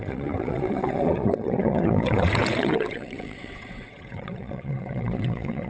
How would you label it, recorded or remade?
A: remade